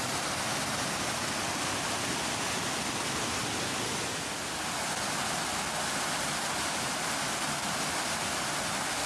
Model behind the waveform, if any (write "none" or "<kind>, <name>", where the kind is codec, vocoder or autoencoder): none